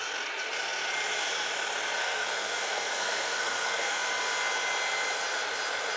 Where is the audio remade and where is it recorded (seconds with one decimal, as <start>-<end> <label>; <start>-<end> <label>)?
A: 0.0-2.0 recorded; 2.0-4.0 remade; 4.0-6.0 recorded